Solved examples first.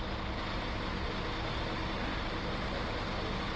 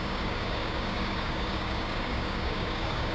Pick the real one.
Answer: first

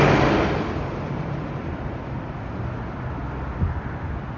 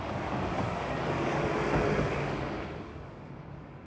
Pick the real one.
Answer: first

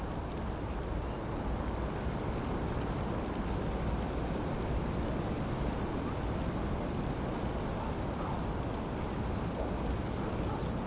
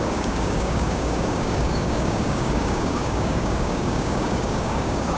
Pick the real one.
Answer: first